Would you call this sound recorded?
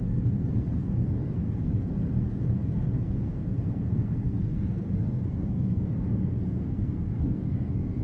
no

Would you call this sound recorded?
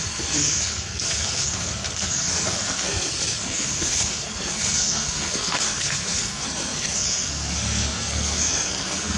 no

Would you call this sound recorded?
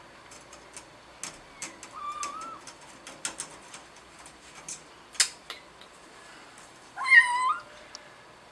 yes